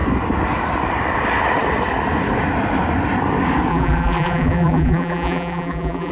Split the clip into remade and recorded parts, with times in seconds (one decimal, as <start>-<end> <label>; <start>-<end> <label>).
0.0-3.7 recorded; 3.7-6.1 remade